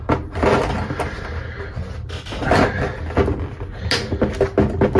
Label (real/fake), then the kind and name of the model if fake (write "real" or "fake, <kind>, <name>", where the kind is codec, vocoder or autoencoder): real